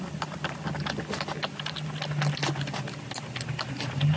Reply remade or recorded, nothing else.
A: recorded